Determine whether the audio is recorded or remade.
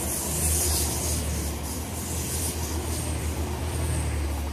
recorded